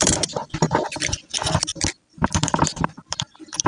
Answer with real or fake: fake